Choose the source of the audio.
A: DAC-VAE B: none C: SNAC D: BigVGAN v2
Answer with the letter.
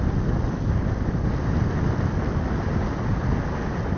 B